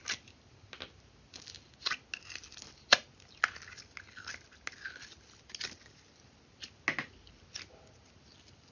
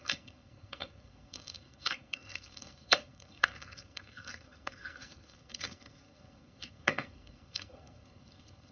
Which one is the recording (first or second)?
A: first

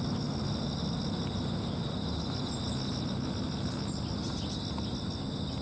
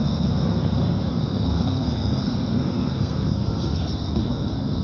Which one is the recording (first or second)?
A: first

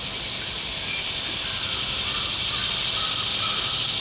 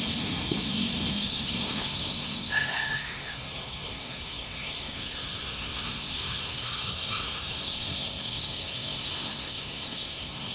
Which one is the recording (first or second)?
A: first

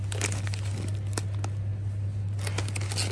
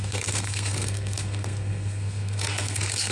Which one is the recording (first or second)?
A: first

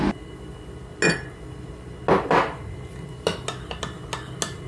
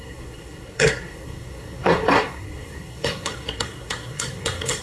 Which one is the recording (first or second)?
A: first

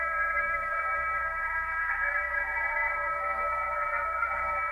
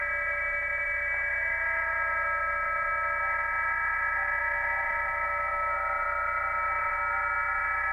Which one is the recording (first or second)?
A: second